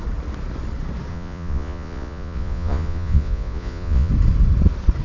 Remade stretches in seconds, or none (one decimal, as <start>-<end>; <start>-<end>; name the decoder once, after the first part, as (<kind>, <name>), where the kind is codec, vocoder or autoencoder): 1.1-4.1 (vocoder, Vocos)